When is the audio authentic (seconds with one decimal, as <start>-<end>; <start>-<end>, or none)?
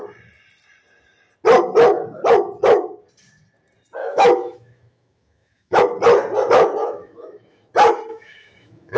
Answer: 0.0-4.0; 5.8-6.8; 7.7-8.1